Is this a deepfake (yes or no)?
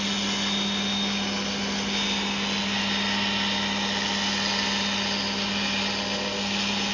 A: no